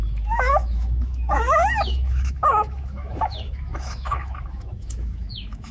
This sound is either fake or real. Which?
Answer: fake